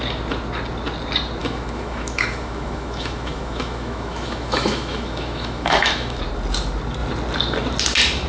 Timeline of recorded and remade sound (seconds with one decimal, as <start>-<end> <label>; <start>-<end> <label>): 0.0-1.4 recorded; 1.4-6.2 remade; 6.2-8.3 recorded